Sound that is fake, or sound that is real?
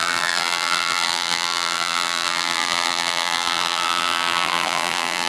fake